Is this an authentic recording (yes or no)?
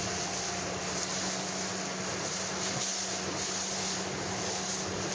yes